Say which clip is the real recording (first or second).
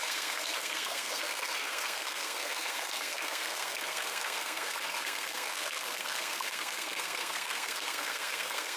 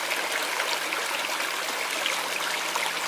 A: second